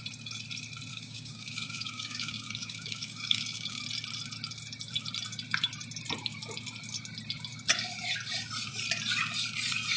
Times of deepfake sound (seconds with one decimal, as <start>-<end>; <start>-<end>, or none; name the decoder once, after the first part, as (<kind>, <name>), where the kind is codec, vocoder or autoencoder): 0.9-3.8 (codec, DAC)